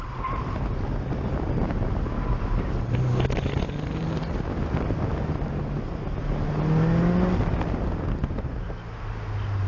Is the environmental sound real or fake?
real